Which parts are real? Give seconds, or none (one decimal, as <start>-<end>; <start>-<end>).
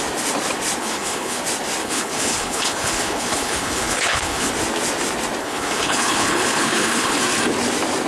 0.0-0.8; 1.4-1.8; 4.5-5.4; 7.2-8.1